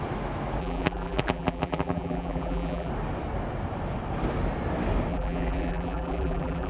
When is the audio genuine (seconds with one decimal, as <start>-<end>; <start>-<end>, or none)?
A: 0.0-0.6; 2.9-5.1

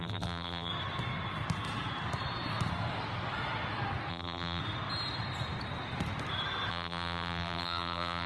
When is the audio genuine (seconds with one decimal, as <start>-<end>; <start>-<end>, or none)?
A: 0.7-4.1; 4.6-6.7

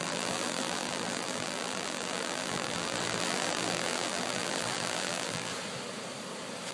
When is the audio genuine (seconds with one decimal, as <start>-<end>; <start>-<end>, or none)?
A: 5.5-6.7

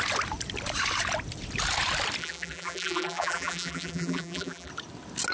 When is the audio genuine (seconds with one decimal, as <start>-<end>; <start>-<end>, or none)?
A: 0.0-2.2; 4.7-5.3

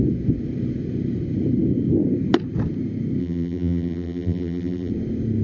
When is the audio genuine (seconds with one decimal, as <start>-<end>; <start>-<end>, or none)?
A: 0.0-3.2; 4.9-5.4

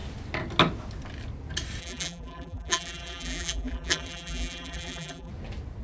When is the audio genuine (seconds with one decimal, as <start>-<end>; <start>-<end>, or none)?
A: 0.0-1.8; 5.3-5.8

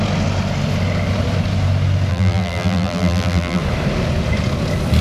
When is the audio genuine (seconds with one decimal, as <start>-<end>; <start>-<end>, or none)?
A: 0.0-2.1; 3.6-5.0